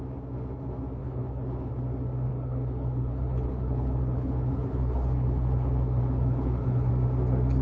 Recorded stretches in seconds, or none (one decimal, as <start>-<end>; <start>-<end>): 0.0-1.0; 1.7-2.3; 6.9-7.6